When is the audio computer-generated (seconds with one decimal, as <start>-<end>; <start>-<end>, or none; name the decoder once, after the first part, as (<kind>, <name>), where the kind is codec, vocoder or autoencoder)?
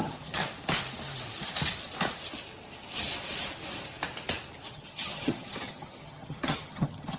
0.0-0.4 (vocoder, HiFi-GAN); 4.7-7.2